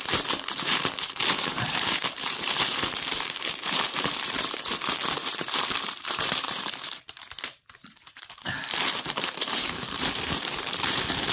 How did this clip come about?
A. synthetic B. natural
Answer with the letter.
A